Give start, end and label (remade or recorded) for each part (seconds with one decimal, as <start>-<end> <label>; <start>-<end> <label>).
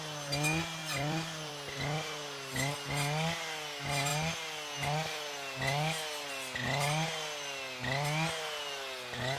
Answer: 0.0-0.8 recorded; 0.8-1.5 remade; 1.5-9.4 recorded